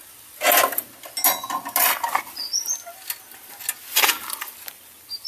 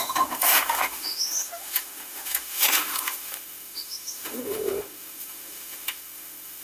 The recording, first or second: first